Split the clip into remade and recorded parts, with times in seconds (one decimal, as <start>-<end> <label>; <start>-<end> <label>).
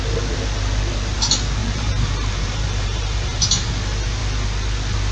0.0-1.6 recorded; 1.6-3.7 remade; 3.7-5.1 recorded